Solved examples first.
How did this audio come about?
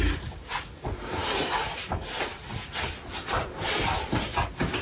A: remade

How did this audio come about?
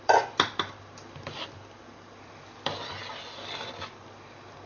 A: remade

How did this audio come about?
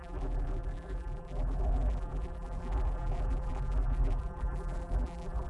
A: remade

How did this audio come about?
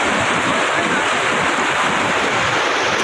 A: recorded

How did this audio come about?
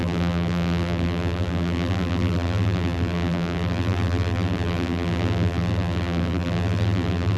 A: remade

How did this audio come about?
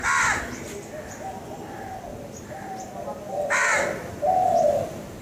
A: recorded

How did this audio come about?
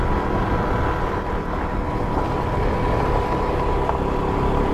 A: recorded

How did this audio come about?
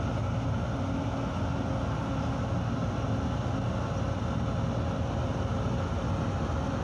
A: recorded